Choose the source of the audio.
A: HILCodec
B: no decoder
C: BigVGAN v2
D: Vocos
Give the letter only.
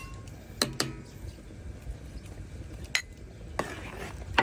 B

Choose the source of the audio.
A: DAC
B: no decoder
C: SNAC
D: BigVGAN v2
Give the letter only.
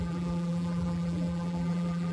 D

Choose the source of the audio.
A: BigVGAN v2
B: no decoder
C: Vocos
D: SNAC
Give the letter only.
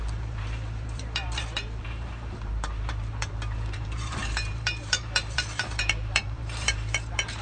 A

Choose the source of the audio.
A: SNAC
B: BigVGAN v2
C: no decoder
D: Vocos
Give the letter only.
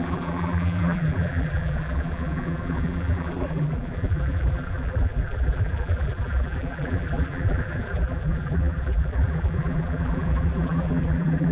B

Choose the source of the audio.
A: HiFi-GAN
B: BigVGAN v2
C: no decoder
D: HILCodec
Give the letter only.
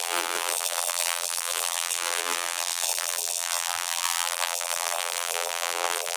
B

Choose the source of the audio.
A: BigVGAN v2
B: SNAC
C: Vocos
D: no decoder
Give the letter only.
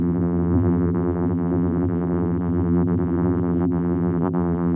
A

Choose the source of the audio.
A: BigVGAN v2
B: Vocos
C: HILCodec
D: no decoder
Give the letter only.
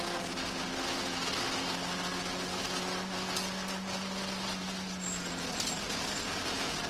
D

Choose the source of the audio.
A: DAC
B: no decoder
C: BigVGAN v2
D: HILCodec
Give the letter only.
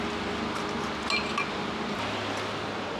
B